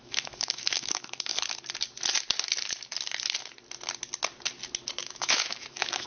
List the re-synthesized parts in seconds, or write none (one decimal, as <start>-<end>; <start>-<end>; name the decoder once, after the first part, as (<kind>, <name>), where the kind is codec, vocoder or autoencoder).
0.0-1.3 (autoencoder, DAC-VAE); 5.0-6.1